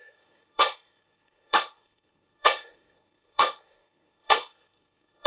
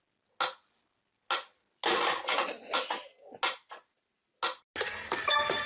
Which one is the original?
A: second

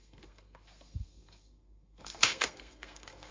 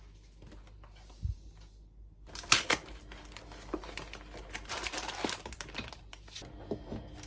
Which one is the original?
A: second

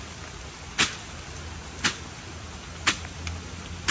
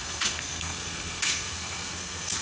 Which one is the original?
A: first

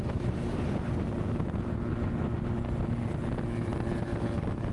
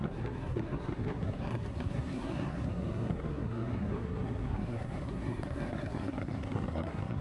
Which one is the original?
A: first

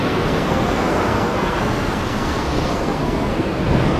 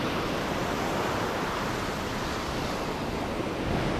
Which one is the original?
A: second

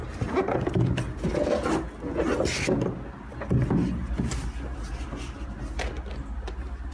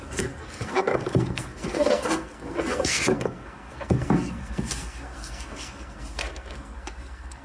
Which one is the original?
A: first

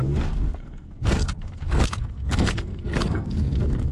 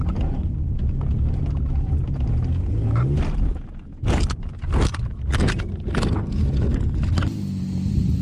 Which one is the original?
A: second